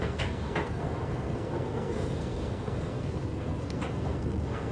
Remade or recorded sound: remade